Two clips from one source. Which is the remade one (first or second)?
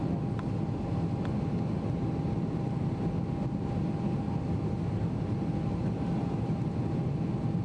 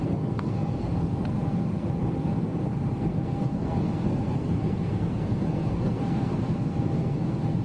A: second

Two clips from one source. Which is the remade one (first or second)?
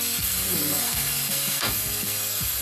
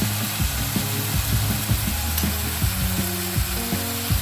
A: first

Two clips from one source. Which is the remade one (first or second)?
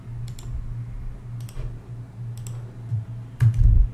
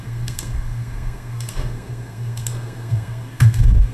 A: second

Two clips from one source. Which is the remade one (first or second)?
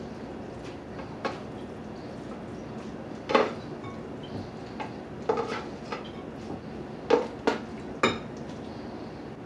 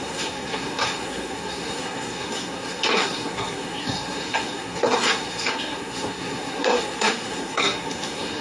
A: second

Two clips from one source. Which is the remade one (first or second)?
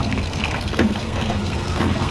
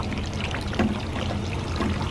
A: first